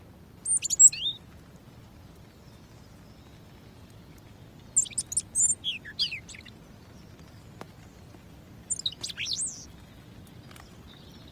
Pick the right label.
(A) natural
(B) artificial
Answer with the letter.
A